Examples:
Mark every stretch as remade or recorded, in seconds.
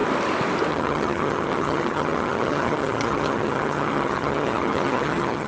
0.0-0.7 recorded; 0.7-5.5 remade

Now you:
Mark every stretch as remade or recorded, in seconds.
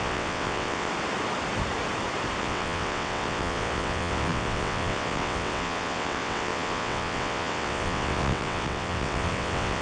0.0-0.9 remade; 0.9-2.4 recorded; 2.4-9.8 remade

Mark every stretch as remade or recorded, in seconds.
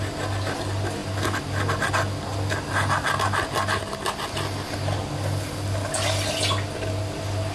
0.0-7.5 recorded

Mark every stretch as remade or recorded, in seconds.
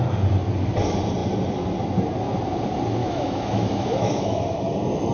0.0-3.0 recorded; 3.0-4.4 remade; 4.4-5.1 recorded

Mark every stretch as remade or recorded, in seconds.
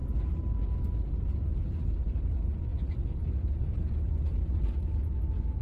0.0-1.5 recorded; 1.5-2.2 remade; 2.2-5.6 recorded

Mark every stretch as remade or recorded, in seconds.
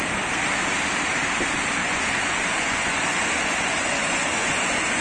0.0-1.8 recorded; 1.8-5.0 remade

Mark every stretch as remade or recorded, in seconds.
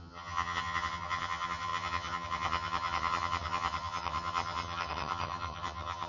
0.0-6.1 remade